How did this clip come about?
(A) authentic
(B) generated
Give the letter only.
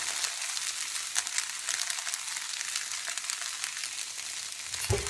A